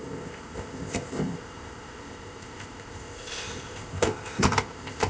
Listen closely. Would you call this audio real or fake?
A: fake